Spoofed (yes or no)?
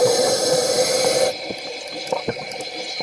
yes